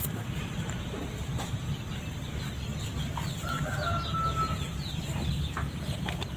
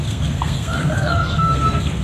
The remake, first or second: second